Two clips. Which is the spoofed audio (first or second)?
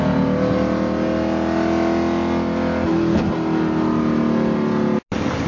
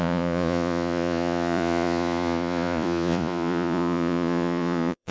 second